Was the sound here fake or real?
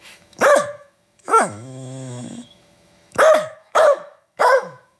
fake